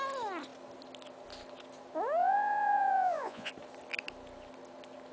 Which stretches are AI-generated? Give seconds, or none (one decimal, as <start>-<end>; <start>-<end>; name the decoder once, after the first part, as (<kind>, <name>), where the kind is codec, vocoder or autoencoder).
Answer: 2.2-3.5 (vocoder, Vocos)